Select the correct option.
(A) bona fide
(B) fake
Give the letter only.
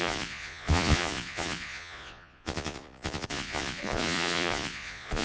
B